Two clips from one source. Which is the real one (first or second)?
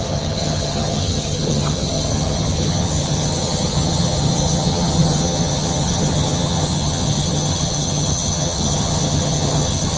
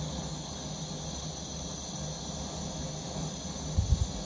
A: second